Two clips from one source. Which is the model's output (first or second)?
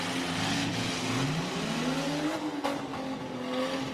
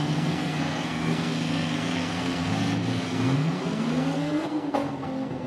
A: second